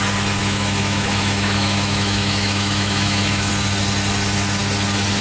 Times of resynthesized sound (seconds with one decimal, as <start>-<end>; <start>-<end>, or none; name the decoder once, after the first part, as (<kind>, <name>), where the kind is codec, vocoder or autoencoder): 0.4-3.5 (autoencoder, DAC-VAE)

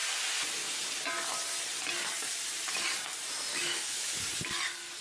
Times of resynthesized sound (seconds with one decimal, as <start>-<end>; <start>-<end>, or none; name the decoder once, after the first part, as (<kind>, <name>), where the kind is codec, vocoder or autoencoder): 3.5-4.2 (autoencoder, DAC-VAE)

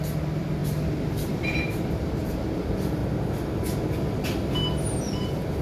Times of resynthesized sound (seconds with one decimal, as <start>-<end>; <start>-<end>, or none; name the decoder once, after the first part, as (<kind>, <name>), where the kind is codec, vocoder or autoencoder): 0.0-0.6 (vocoder, BigVGAN v2); 1.1-3.0

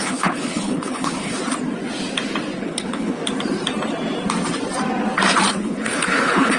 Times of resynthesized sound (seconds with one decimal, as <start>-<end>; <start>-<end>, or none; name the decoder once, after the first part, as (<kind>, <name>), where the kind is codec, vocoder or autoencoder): 0.0-1.4 (codec, HILCodec); 2.6-3.2; 5.5-6.6